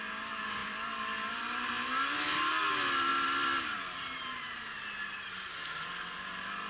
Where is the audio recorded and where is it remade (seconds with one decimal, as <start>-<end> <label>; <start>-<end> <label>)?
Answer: 0.0-0.6 recorded; 0.6-1.4 remade; 1.4-3.1 recorded; 3.1-4.2 remade; 4.2-6.7 recorded